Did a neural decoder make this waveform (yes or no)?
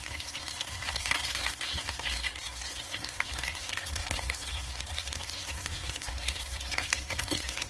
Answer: yes